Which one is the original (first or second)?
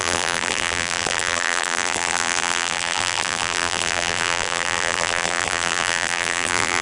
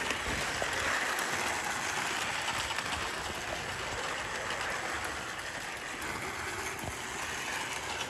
second